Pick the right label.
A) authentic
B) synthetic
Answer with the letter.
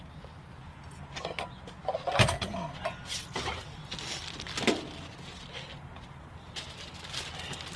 A